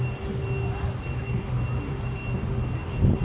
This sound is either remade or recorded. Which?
recorded